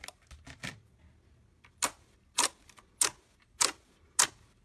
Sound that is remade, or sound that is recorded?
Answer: recorded